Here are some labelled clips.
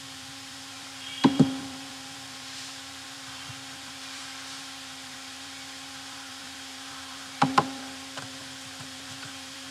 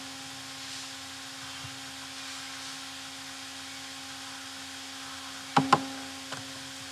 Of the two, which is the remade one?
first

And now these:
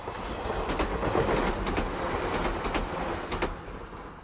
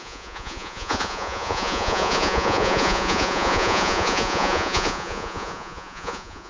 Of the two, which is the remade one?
second